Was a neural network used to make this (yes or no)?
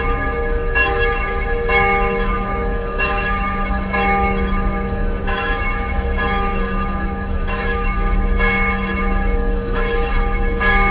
yes